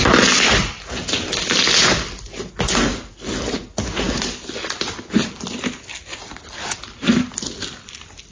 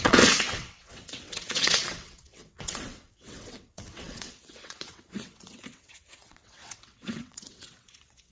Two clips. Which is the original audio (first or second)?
first